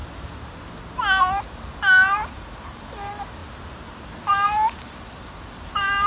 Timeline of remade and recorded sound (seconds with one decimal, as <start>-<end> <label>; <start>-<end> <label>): 0.0-1.2 recorded; 1.2-3.4 remade; 3.4-4.2 recorded; 4.2-6.1 remade